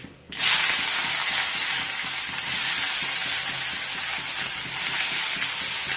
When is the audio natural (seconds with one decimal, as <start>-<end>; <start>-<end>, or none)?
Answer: 0.0-6.0

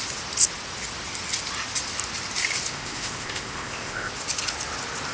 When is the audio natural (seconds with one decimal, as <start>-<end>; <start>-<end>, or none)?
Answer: 0.0-2.7; 4.1-5.1

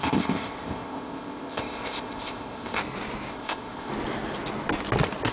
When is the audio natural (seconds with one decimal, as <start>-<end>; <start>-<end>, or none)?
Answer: 2.8-3.3; 3.9-5.3

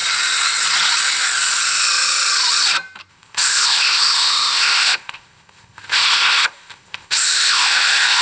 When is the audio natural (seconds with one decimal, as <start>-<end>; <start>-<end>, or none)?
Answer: 0.0-3.1

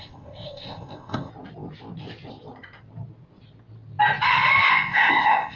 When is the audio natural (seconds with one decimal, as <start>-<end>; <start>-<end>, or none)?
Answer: 1.3-4.7

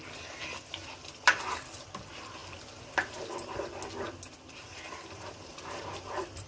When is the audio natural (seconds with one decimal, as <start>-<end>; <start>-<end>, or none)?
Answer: 0.0-6.5